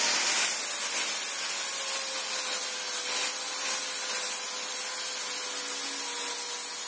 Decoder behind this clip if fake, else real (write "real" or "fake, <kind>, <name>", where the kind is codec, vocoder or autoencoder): real